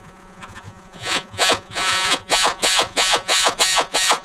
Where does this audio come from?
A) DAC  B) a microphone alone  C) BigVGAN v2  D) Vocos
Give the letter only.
D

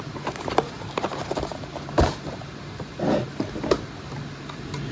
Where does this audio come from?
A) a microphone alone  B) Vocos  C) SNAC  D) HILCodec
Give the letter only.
A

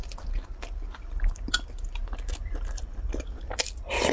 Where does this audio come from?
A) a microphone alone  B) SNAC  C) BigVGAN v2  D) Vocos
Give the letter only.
A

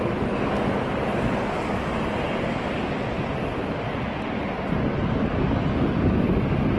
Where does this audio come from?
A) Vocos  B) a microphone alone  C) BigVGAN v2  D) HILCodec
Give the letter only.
B